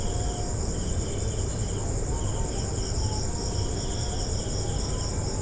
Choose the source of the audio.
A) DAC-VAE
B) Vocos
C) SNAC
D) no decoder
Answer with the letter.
D